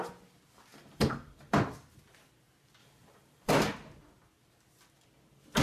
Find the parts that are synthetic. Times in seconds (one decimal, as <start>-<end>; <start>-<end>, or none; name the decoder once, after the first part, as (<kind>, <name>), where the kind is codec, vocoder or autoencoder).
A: 0.7-1.5 (vocoder, BigVGAN v2); 2.8-3.5